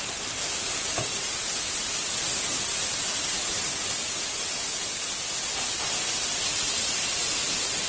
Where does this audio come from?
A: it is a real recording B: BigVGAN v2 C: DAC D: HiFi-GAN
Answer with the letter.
A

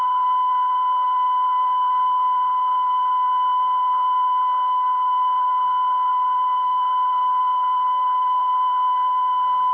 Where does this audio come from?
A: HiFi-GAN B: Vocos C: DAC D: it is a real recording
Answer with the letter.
C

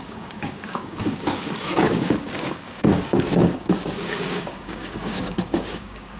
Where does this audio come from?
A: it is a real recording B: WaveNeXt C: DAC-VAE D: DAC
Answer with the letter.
D